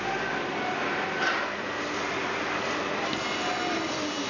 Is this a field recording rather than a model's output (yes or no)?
yes